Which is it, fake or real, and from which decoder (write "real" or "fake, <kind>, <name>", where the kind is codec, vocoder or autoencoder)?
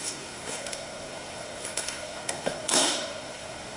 fake, codec, SNAC